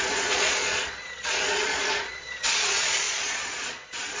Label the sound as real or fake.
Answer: fake